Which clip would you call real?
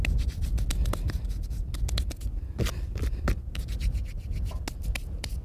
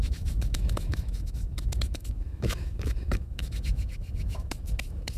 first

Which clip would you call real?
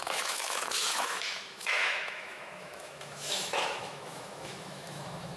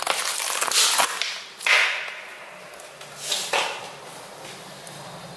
second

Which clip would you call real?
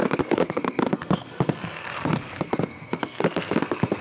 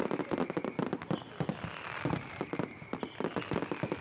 second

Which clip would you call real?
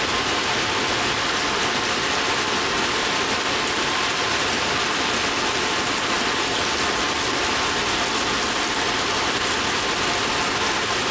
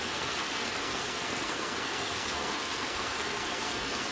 first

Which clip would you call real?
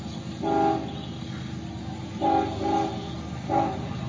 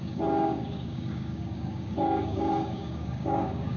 first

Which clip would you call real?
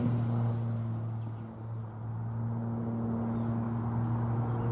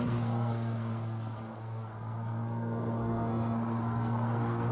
first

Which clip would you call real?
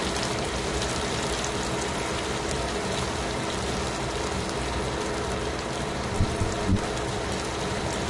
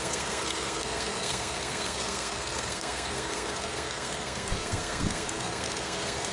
first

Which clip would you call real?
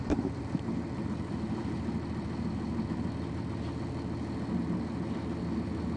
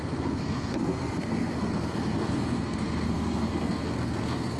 first